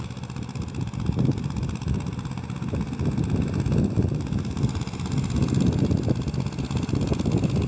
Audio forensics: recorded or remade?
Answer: recorded